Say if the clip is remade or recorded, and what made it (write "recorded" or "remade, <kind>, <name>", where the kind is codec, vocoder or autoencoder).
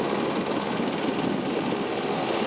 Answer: recorded